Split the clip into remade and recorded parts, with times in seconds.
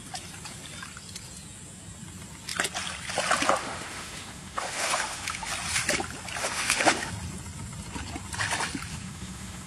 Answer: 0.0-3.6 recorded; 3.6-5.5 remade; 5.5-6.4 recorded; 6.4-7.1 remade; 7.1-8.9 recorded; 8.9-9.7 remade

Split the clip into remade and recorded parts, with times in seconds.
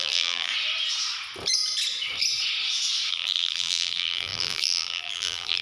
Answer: 0.0-0.5 remade; 0.5-3.1 recorded; 3.1-5.6 remade